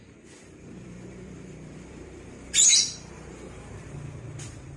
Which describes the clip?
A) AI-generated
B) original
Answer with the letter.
A